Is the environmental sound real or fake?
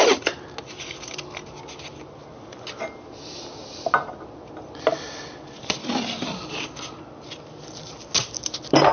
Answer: real